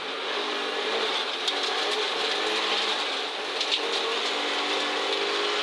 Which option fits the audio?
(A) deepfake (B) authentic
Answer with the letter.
B